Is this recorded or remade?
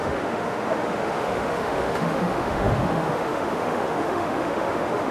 remade